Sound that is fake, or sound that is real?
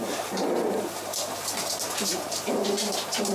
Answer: fake